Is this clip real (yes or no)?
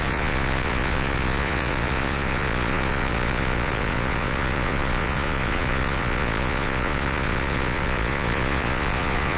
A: no